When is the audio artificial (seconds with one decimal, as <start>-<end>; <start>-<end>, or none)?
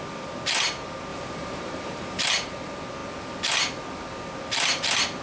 1.1-2.3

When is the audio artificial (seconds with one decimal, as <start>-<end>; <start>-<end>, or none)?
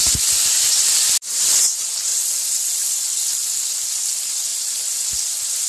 none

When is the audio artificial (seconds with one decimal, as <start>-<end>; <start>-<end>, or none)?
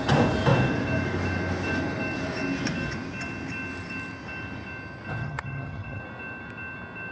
5.2-6.0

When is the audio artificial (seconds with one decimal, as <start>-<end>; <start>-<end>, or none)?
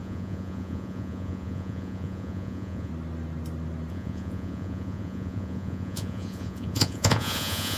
0.0-2.9; 3.9-7.8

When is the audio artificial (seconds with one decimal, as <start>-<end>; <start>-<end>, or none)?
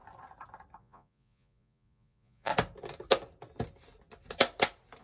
0.8-2.5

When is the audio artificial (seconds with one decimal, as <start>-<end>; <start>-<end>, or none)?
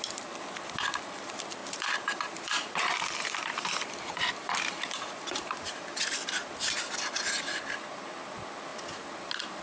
1.6-6.0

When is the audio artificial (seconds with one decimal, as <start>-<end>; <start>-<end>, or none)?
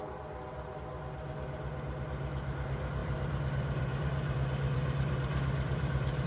3.0-6.3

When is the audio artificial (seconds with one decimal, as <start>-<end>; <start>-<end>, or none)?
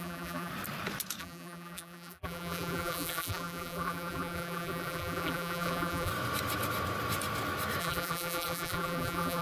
0.0-0.5; 1.2-6.1; 7.8-9.4